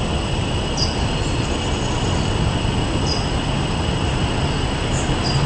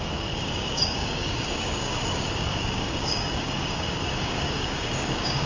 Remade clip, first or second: second